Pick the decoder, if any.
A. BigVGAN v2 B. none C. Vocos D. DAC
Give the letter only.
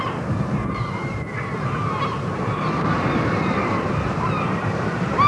A